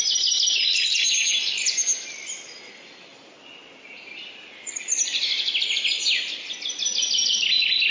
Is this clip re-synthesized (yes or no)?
no